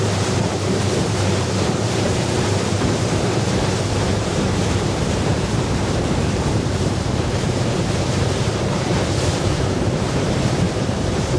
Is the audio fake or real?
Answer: fake